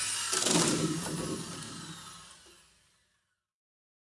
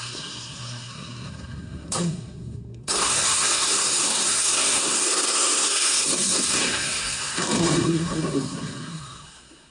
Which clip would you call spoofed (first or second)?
second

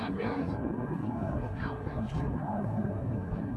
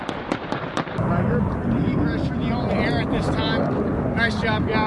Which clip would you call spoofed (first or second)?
first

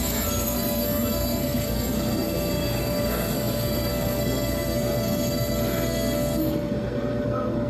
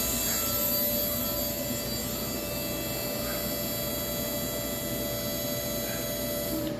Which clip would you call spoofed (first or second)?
first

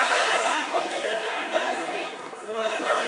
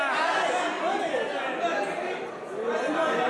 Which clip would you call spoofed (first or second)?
first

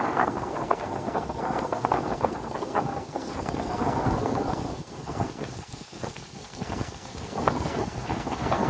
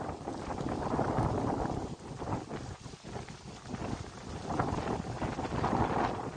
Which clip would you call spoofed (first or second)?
first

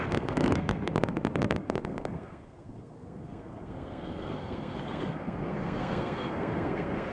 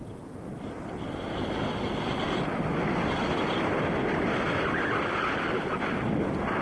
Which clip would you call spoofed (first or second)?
first